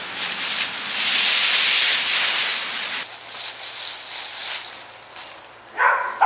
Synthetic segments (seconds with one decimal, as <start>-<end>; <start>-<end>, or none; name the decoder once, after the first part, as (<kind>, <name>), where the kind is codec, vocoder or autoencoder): none